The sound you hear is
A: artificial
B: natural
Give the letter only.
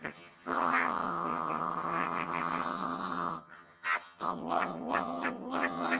A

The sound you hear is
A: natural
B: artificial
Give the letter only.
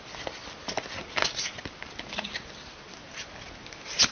A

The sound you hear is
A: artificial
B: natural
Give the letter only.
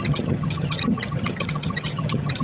A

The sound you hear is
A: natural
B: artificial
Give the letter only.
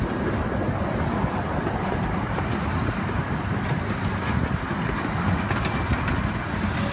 A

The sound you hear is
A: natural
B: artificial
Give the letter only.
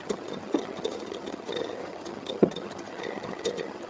B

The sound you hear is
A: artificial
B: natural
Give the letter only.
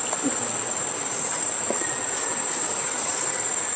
B